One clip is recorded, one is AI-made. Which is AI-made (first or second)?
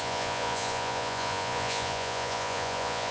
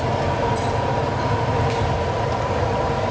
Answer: first